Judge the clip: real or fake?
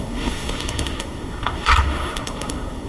fake